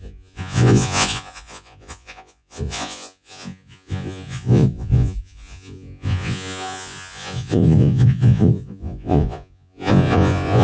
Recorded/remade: remade